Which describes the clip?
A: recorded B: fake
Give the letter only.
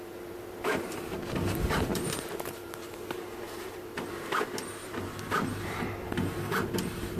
B